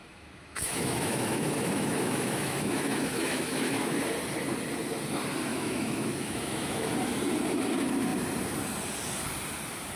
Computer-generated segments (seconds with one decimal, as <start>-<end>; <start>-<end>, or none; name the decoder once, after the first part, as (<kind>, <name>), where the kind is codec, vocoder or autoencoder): 0.0-4.0 (autoencoder, DAC-VAE); 5.5-6.9